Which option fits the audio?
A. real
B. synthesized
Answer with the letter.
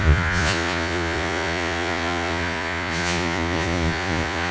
B